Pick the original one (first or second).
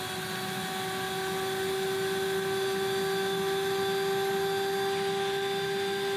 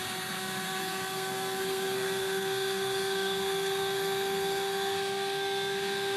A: first